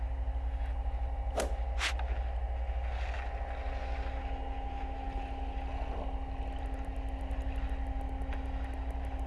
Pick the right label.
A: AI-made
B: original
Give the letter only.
B